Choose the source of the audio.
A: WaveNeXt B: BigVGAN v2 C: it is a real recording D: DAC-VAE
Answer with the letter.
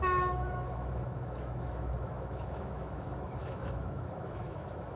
D